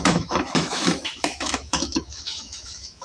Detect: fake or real fake